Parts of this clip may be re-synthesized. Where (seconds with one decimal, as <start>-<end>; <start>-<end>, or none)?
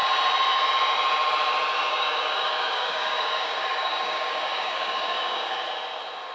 1.8-5.6